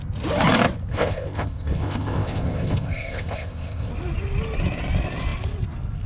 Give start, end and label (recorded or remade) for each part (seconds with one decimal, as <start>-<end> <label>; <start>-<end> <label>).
0.0-0.9 recorded; 0.9-3.9 remade; 3.9-6.1 recorded